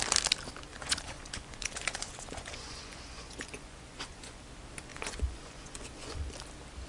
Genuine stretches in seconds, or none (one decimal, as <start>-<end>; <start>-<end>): 0.0-0.7; 4.4-4.9; 6.3-6.9